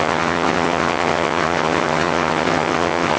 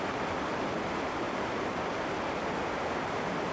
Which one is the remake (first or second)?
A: first